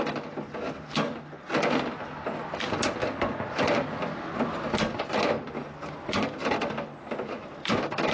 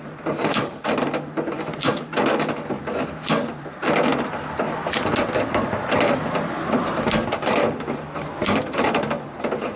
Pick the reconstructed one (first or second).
second